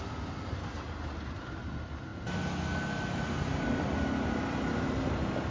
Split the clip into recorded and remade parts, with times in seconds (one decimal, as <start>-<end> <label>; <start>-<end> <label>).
0.0-5.5 recorded